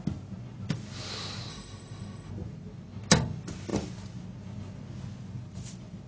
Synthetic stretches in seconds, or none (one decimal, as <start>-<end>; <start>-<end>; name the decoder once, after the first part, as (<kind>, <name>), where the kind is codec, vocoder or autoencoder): 1.5-2.3 (autoencoder, DAC-VAE)